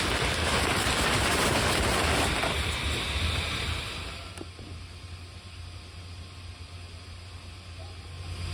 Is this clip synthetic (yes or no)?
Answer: no